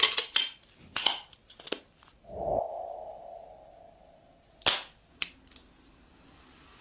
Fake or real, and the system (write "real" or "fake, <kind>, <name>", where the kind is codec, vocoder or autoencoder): real